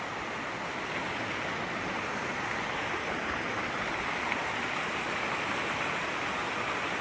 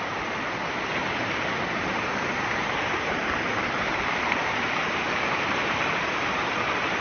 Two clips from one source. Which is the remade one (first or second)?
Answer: second